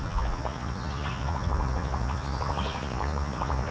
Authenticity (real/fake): fake